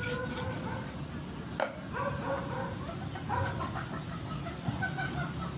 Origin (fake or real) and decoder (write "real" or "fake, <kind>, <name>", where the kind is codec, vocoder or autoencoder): real